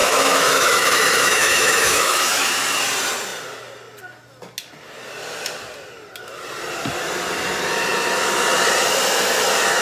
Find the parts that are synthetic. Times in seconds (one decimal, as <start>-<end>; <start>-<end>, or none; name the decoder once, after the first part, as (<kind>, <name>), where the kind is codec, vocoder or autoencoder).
0.0-2.5 (autoencoder, DAC-VAE)

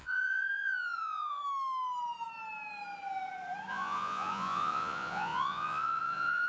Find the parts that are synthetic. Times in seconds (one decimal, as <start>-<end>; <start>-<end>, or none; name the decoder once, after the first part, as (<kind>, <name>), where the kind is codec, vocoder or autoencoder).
0.0-1.4 (vocoder, Vocos); 3.7-6.5

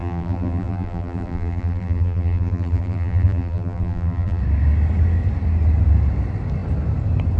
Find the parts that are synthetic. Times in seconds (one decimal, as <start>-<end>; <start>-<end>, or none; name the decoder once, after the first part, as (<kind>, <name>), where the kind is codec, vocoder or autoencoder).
0.0-4.4 (vocoder, BigVGAN v2)

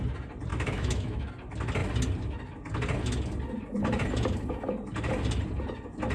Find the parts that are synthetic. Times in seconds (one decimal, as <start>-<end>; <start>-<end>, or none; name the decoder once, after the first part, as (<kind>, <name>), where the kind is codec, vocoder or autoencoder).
0.5-1.3 (autoencoder, DAC-VAE)

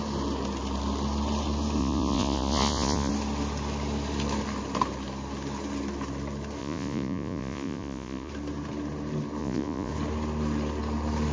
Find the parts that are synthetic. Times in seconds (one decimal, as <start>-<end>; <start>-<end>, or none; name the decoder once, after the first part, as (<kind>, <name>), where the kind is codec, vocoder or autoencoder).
1.8-3.1 (vocoder, Vocos); 6.6-8.3; 9.4-9.9

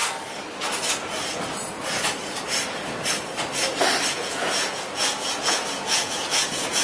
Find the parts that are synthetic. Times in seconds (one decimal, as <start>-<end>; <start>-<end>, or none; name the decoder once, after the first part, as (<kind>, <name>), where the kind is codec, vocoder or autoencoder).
4.1-6.8 (vocoder, Vocos)

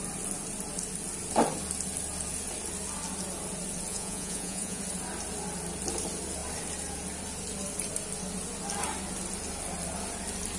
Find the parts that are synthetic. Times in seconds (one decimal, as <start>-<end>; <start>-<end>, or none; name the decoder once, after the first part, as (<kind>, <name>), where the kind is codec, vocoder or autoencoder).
3.9-4.8 (vocoder, Vocos)

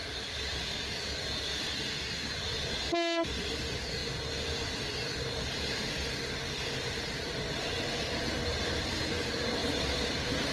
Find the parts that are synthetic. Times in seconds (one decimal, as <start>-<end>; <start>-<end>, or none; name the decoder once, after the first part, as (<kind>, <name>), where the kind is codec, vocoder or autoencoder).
9.6-10.5 (vocoder, BigVGAN v2)